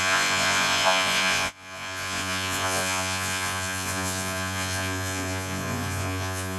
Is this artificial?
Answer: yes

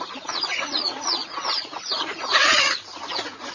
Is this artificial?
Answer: yes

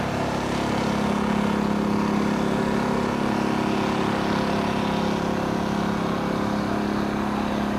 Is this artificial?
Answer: no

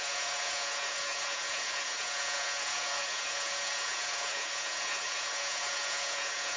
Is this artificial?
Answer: yes